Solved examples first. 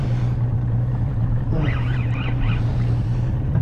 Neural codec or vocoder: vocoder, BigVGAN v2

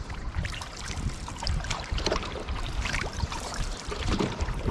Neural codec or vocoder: vocoder, BigVGAN v2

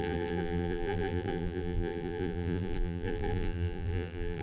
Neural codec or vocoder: vocoder, BigVGAN v2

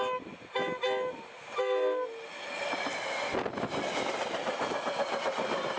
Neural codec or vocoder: none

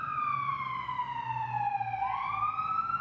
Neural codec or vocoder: none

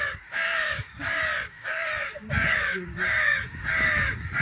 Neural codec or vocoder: codec, DAC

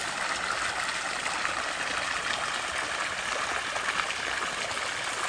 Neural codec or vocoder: none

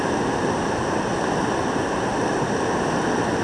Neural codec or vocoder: none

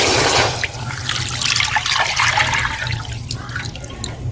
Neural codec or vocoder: none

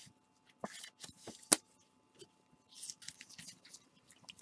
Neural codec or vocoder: none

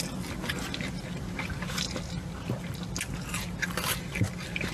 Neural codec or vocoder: none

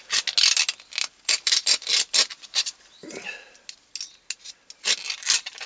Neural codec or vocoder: none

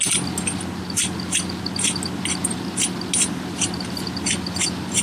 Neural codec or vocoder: none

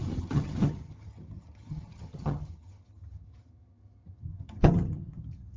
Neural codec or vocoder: vocoder, HiFi-GAN